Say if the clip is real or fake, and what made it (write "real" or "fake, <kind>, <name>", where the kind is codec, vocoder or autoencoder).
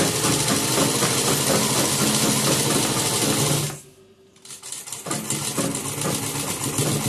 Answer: real